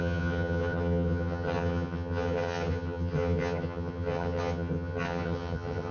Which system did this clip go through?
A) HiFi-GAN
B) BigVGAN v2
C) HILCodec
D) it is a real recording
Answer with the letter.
A